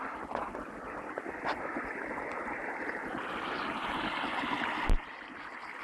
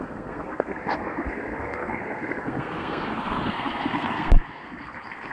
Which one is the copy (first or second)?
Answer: second